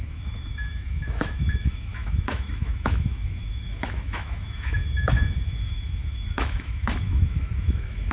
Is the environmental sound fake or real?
fake